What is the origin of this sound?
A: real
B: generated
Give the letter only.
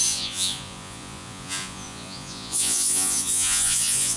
B